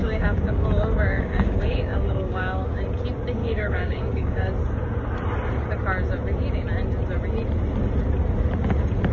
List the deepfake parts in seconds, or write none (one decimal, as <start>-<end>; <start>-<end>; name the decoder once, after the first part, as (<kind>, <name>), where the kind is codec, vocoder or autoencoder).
0.0-2.8 (codec, DAC); 3.4-4.5

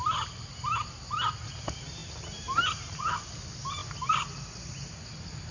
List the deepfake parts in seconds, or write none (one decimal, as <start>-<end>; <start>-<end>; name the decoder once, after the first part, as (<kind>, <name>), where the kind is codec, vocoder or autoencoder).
none

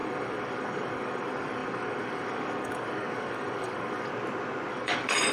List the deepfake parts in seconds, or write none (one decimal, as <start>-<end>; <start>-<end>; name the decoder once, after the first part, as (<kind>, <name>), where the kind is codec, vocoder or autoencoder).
0.0-4.1 (codec, DAC); 4.7-5.3

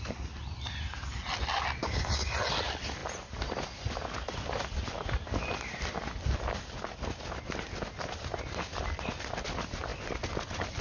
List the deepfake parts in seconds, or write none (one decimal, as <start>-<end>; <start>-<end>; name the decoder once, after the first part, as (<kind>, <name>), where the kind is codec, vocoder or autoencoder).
1.8-2.3 (codec, DAC)

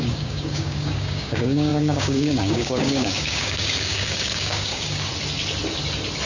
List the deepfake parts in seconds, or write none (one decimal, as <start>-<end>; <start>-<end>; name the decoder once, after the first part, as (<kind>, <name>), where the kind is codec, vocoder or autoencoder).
0.0-5.1 (codec, DAC)

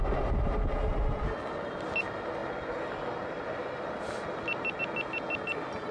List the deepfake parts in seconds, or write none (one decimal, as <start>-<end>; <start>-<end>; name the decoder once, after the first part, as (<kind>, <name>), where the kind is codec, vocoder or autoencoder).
none

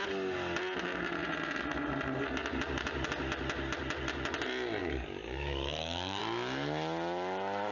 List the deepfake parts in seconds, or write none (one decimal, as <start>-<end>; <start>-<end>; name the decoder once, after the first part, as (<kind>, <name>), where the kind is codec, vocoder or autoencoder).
4.8-6.2 (codec, DAC)

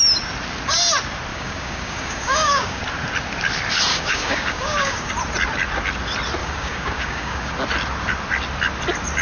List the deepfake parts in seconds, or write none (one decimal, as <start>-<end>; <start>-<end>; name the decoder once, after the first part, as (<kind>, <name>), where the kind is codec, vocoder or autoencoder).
1.3-2.8 (codec, DAC); 3.9-5.1; 6.4-7.5